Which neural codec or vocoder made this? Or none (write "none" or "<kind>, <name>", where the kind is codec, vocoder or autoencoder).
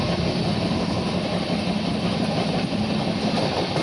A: none